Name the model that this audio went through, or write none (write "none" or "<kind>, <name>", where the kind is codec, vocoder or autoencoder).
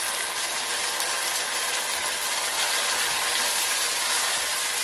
none